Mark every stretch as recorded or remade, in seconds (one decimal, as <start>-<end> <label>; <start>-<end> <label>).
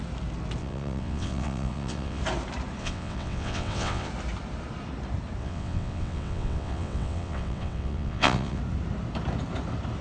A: 0.0-0.6 recorded; 0.6-2.2 remade; 2.2-2.8 recorded; 2.8-4.1 remade; 4.1-5.4 recorded; 5.4-8.6 remade; 8.6-10.0 recorded